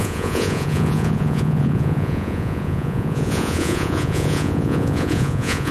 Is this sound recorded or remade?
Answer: remade